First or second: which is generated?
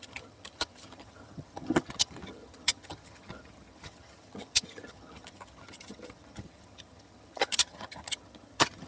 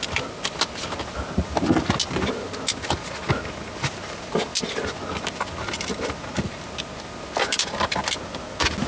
first